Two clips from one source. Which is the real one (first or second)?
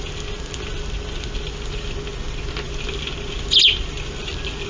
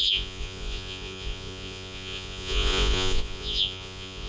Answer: first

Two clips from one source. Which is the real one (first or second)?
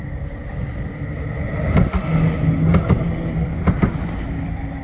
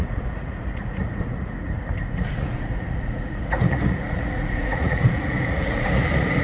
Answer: first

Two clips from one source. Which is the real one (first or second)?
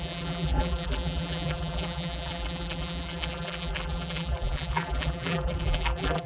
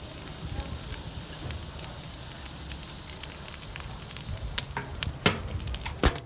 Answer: second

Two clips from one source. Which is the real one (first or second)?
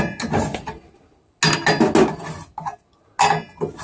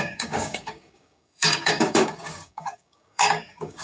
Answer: first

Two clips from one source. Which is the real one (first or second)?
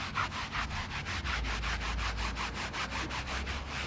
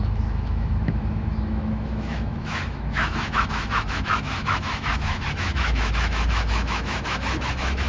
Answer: first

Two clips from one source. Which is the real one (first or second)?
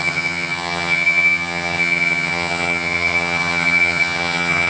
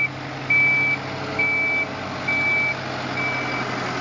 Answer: second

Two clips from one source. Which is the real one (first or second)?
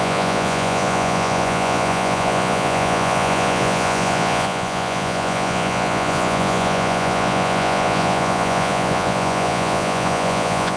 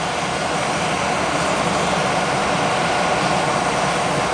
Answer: second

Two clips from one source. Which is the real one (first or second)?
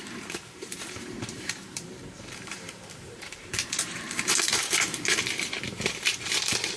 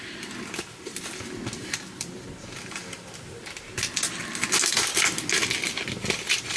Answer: second